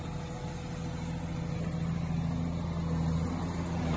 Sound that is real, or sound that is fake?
real